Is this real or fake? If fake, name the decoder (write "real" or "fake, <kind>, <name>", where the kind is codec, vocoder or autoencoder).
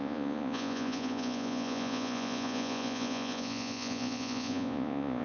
fake, vocoder, Vocos